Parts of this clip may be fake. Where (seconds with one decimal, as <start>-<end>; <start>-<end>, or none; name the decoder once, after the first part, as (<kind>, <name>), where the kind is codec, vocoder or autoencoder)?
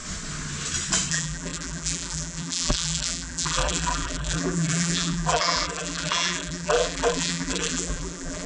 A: 1.1-8.5 (vocoder, BigVGAN v2)